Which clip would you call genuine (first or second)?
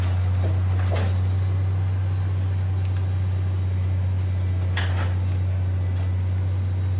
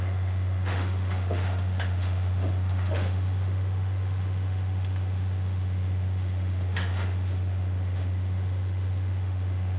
first